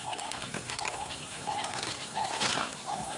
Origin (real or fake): fake